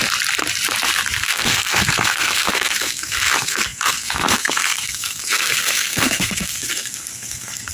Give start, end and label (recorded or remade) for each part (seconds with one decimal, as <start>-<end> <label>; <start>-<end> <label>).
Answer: 0.0-1.2 recorded; 1.2-7.7 remade